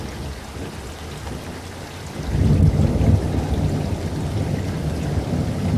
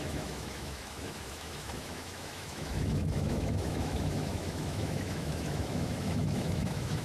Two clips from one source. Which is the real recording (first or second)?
first